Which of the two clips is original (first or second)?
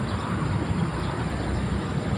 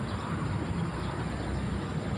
second